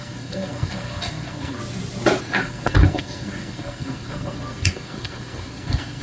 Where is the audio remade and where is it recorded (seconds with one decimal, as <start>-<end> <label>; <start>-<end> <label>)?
0.0-1.6 remade; 1.6-2.2 recorded; 2.2-6.0 remade